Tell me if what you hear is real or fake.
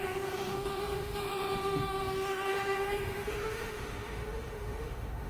fake